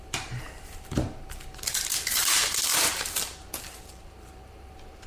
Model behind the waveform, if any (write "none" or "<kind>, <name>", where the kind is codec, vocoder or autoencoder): vocoder, BigVGAN v2